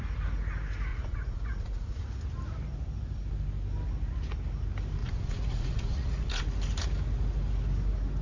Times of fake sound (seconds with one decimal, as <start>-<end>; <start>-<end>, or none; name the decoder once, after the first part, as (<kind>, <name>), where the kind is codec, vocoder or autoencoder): 0.9-2.0 (vocoder, Vocos); 5.0-6.4

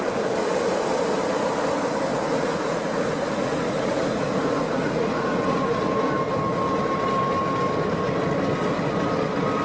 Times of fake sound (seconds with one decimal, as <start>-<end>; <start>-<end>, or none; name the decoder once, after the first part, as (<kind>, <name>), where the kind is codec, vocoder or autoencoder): 2.1-6.1 (vocoder, Vocos)

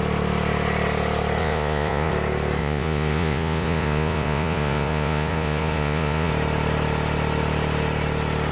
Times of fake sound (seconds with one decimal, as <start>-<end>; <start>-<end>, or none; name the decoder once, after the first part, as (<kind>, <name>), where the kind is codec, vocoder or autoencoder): 1.4-2.1 (vocoder, Vocos); 2.6-6.3

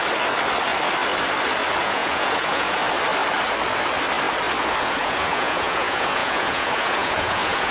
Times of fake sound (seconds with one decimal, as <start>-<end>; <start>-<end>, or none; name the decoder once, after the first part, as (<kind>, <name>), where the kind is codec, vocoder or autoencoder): 1.8-2.8 (vocoder, Vocos); 4.8-7.7

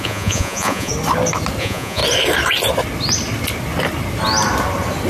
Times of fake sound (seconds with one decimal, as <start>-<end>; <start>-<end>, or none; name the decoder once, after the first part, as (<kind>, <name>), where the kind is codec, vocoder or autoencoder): 0.0-0.9 (vocoder, Vocos); 1.6-2.0

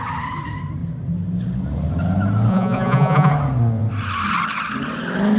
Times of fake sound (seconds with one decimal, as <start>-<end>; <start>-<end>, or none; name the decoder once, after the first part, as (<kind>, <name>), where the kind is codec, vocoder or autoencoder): 2.5-3.3 (vocoder, Vocos)

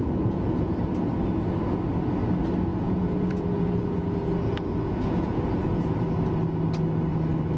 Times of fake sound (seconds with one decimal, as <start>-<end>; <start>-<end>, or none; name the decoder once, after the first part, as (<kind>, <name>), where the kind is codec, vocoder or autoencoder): 0.0-0.8 (vocoder, Vocos); 2.7-6.0